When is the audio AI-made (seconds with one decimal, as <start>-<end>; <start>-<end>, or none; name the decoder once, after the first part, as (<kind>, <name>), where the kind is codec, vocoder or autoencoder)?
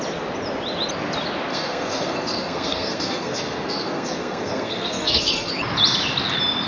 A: 1.5-5.5 (codec, SNAC)